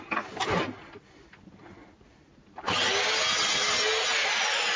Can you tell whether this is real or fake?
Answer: real